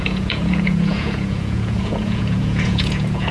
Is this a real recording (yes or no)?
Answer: no